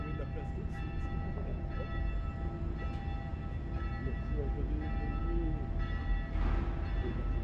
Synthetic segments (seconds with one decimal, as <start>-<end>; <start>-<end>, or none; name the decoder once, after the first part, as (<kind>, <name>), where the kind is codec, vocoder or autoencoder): none